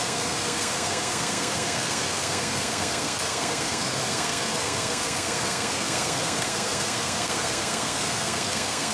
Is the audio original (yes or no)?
no